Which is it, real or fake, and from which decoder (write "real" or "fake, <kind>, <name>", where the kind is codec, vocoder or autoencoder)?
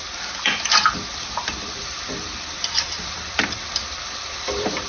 fake, vocoder, BigVGAN v2